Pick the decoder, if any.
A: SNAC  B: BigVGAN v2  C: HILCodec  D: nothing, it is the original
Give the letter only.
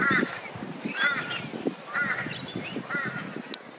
D